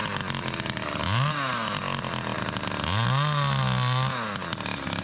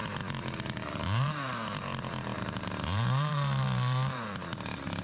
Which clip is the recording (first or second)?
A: first